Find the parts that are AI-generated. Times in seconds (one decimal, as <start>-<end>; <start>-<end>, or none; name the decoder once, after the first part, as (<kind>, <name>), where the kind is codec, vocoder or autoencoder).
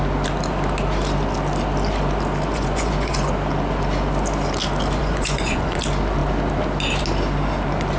2.5-3.3 (vocoder, Vocos); 5.0-5.8